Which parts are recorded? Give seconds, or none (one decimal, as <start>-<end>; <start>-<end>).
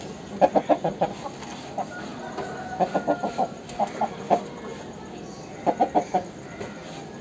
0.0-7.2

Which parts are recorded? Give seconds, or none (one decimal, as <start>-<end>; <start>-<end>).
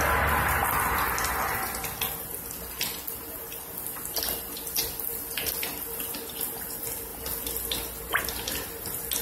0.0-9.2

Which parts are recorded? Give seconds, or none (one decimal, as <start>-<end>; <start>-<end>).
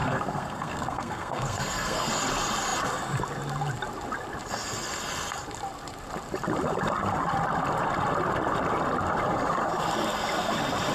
2.1-10.9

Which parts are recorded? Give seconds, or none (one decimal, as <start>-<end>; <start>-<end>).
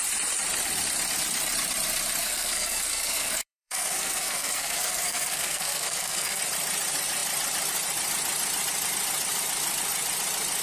0.0-2.2; 6.4-10.6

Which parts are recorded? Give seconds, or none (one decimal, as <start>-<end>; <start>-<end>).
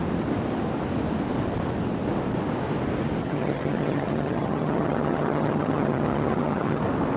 0.0-3.2; 6.8-7.2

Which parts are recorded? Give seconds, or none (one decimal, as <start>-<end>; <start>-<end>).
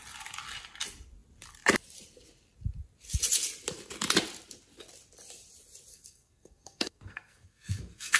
0.0-5.9